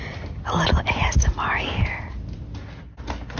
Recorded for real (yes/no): yes